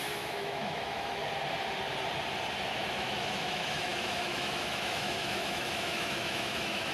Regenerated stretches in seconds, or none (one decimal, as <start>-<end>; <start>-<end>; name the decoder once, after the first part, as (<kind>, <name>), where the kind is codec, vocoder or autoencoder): 0.0-1.2 (autoencoder, DAC-VAE); 2.7-6.9